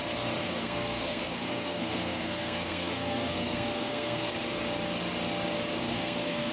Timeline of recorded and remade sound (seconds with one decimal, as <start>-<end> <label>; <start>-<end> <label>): 0.0-0.4 recorded; 0.4-4.3 remade; 4.3-5.9 recorded; 5.9-6.5 remade